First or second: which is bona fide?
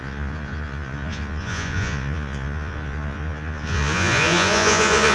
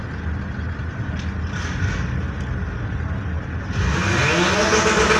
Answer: second